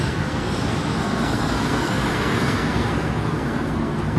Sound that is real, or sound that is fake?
fake